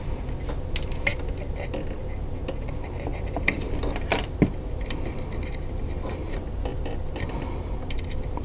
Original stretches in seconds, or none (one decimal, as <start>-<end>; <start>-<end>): 0.0-3.1; 6.9-8.4